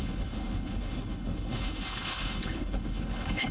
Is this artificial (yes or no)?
yes